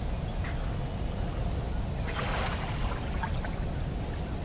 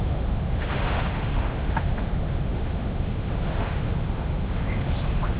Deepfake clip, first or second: second